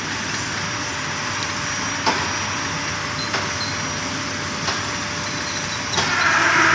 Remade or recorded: recorded